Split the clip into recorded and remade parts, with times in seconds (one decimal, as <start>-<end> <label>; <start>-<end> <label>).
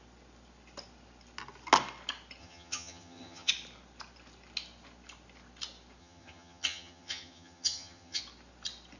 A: 0.0-2.4 recorded; 2.4-3.5 remade; 3.5-6.0 recorded; 6.0-8.2 remade; 8.2-9.0 recorded